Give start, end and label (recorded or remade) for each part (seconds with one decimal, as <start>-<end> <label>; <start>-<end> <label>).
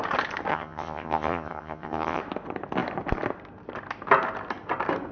0.0-0.5 recorded; 0.5-2.2 remade; 2.2-5.1 recorded